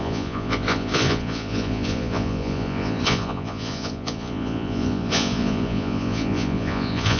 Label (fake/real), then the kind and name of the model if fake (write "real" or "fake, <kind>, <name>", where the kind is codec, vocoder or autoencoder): fake, vocoder, Vocos